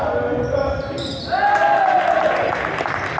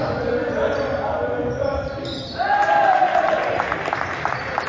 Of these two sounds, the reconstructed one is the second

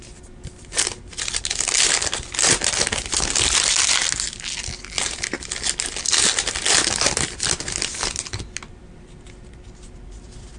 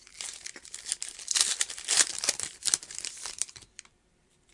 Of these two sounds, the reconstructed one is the second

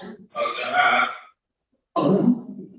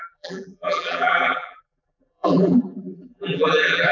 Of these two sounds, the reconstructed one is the second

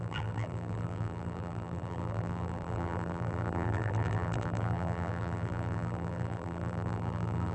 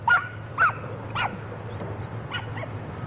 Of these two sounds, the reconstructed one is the first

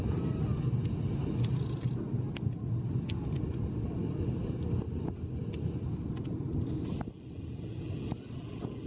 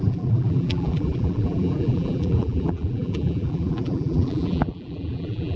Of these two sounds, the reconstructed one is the second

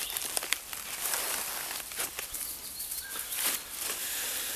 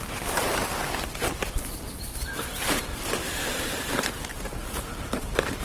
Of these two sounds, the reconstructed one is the second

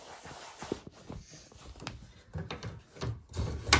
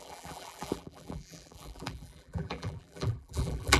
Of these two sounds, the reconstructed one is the second